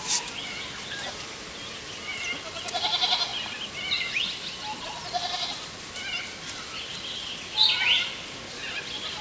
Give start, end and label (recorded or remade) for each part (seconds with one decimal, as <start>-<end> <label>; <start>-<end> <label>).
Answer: 0.0-9.2 recorded